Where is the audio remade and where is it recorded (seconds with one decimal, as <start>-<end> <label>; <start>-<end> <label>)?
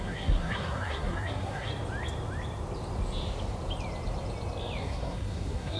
0.0-1.7 remade; 1.7-4.8 recorded; 4.8-5.8 remade